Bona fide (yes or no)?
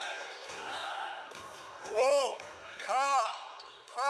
no